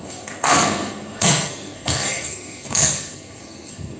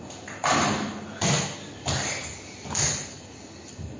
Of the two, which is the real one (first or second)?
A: second